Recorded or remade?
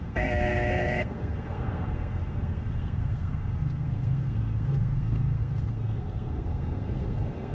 remade